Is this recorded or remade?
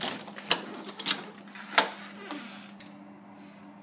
recorded